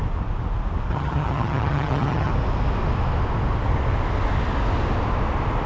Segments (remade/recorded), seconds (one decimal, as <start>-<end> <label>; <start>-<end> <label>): 0.0-0.9 recorded; 0.9-2.3 remade; 2.3-5.7 recorded